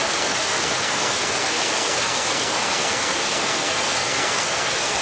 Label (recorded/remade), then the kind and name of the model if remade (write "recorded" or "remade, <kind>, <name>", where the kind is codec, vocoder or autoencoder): remade, codec, SNAC